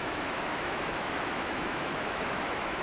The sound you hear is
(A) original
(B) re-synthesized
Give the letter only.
B